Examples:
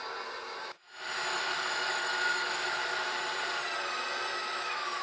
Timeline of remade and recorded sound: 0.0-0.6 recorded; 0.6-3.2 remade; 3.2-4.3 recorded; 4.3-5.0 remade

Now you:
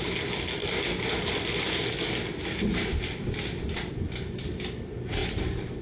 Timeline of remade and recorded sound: 0.0-5.8 recorded

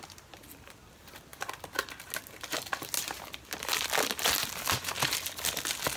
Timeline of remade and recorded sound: 0.0-6.0 recorded

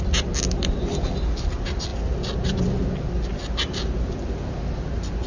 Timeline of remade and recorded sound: 0.0-5.3 recorded

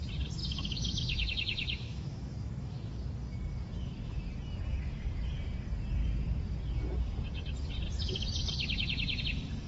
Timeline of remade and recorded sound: 0.0-0.4 recorded; 0.4-2.9 remade; 2.9-9.7 recorded

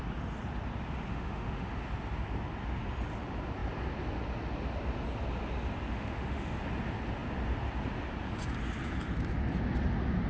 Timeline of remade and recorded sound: 0.0-1.1 recorded; 1.1-1.7 remade; 1.7-5.9 recorded; 5.9-6.5 remade; 6.5-10.3 recorded